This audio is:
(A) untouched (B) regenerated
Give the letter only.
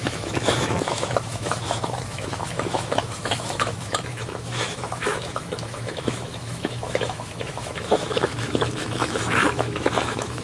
B